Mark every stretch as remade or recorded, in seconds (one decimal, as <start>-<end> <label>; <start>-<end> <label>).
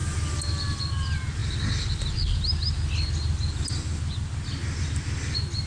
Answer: 0.0-5.7 recorded